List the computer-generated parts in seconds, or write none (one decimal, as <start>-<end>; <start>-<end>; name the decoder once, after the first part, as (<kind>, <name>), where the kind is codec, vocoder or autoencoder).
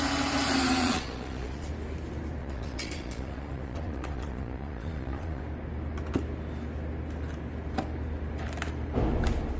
0.8-1.7 (vocoder, Vocos); 2.4-5.4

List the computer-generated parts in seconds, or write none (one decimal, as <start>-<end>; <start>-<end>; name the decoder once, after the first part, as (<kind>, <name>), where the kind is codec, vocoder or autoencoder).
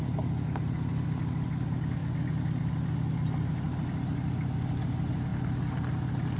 none